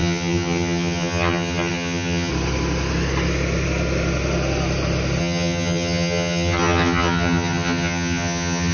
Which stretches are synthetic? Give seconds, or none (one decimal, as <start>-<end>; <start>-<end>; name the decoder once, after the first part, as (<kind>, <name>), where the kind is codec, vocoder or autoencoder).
0.0-2.3 (vocoder, HiFi-GAN); 5.2-8.7